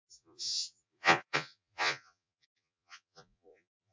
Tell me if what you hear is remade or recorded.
remade